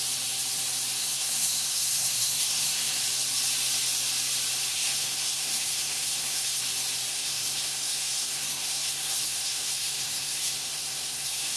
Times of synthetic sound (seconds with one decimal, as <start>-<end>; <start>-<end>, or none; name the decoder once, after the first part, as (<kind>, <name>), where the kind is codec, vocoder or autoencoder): 1.0-3.0 (codec, SNAC); 4.7-6.6; 7.1-11.6